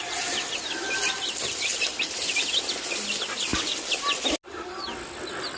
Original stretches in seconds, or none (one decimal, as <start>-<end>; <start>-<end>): 0.0-5.6